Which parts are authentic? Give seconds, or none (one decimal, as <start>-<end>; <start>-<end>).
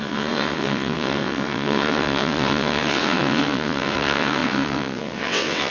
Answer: none